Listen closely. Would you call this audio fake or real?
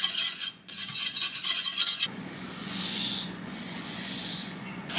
fake